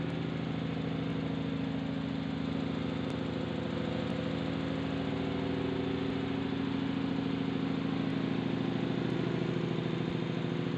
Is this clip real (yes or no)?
yes